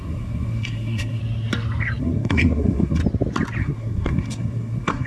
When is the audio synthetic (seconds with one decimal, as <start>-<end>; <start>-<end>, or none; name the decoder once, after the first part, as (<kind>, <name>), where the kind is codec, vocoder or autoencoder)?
0.0-1.2 (codec, SNAC); 2.0-3.0; 3.6-5.1